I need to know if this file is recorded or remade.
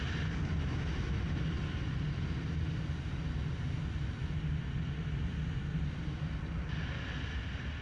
recorded